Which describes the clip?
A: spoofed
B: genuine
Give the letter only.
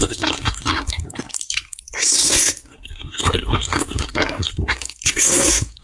A